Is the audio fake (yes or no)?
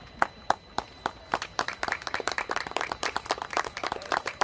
yes